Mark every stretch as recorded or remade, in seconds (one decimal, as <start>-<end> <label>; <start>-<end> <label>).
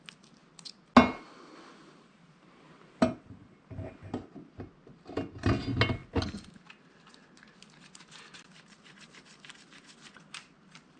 0.0-11.0 recorded